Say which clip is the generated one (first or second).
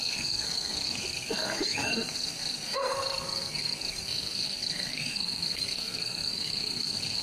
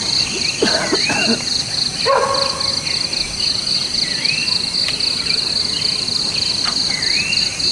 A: first